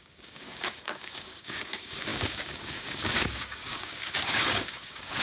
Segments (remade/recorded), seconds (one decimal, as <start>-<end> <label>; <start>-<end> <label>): 0.0-5.2 remade